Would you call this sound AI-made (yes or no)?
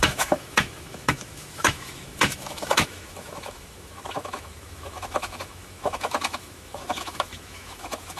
yes